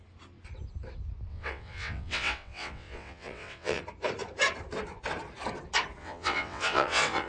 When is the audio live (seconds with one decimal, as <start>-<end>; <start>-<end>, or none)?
0.0-1.3; 3.8-6.0